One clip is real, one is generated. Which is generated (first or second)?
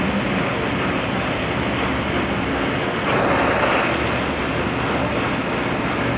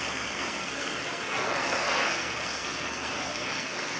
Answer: second